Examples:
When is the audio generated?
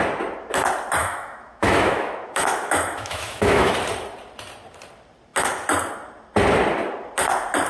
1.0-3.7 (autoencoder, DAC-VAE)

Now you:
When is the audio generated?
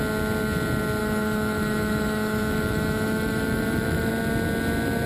1.0-4.1 (autoencoder, DAC-VAE)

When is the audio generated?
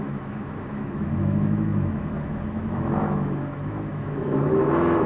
0.0-5.1 (autoencoder, DAC-VAE)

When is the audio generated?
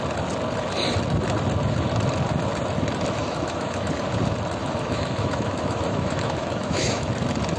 3.2-3.9 (autoencoder, DAC-VAE); 4.6-7.1